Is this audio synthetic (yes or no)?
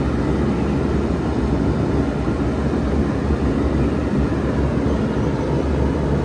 no